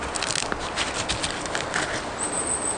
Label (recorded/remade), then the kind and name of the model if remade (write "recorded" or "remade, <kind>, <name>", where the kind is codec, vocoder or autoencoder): recorded